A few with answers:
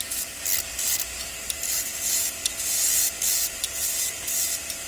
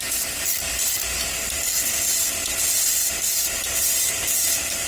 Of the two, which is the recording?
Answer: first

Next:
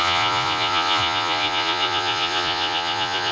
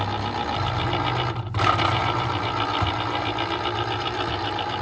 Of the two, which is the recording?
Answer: second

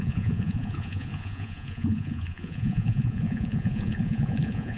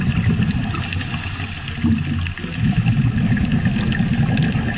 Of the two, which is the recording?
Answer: second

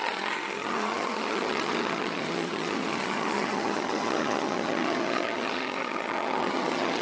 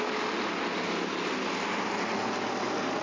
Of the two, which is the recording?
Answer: second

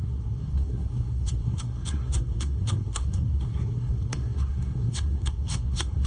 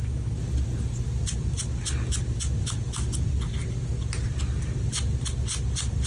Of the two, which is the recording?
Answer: second